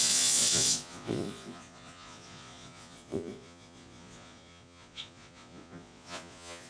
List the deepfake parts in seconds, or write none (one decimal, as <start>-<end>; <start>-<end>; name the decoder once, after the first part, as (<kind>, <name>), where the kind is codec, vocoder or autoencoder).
0.0-6.7 (vocoder, Vocos)